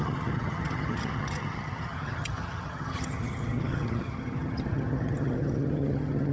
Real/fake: fake